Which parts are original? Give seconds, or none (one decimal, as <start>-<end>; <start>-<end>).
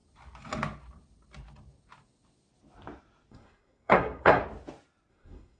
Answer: 0.0-3.3; 4.4-5.1